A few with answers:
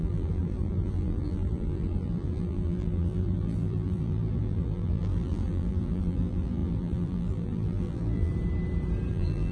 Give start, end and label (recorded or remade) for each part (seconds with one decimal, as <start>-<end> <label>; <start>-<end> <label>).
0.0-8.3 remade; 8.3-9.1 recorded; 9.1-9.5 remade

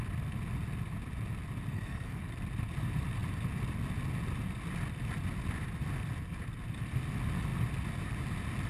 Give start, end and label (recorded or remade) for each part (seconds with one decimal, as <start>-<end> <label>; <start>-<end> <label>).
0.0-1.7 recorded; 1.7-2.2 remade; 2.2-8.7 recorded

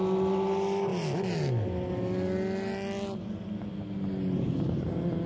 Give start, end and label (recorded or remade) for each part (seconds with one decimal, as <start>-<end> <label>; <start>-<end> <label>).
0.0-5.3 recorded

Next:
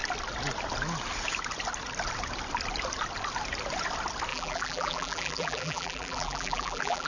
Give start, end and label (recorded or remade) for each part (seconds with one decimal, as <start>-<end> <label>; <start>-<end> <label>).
0.0-4.3 recorded; 4.3-7.1 remade

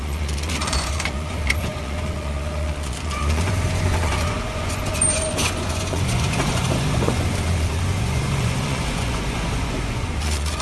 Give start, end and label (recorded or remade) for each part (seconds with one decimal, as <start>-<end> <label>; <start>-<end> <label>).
0.0-10.6 remade

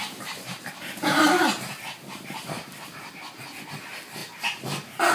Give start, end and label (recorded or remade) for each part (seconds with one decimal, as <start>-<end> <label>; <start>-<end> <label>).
0.0-3.1 remade; 3.1-5.1 recorded

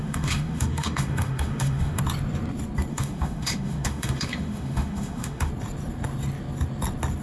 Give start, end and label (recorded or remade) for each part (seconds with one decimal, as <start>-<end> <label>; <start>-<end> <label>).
0.0-2.0 remade; 2.0-2.9 recorded; 2.9-5.5 remade; 5.5-7.2 recorded